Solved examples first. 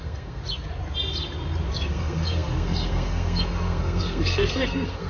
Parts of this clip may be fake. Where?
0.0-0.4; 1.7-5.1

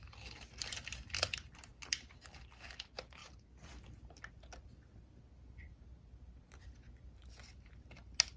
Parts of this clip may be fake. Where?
none

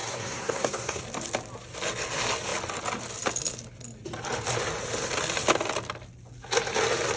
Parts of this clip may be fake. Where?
0.0-1.0

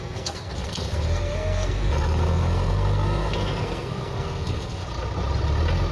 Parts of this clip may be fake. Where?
0.0-4.8

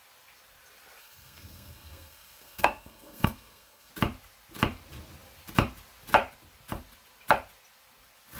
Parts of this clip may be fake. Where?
1.0-3.9

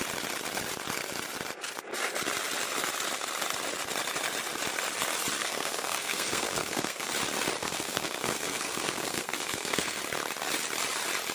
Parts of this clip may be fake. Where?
5.4-7.1; 7.6-10.0

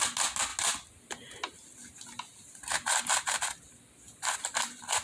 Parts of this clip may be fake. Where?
none

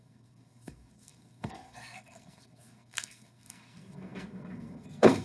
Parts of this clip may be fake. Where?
0.0-5.2